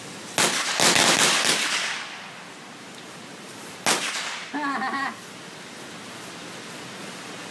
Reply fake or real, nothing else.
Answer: real